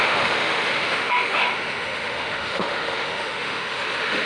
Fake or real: fake